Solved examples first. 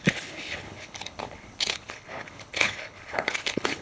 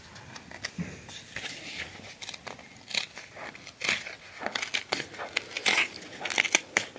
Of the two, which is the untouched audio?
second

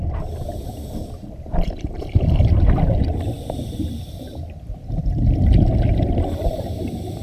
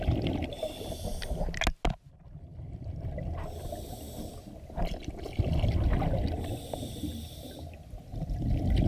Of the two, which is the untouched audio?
second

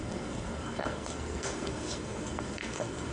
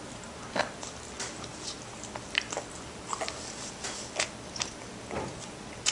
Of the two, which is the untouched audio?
second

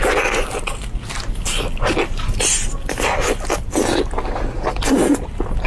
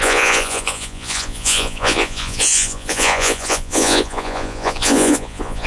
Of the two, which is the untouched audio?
first